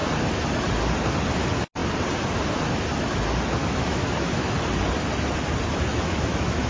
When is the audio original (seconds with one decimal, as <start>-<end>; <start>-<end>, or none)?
0.0-3.6; 4.5-5.9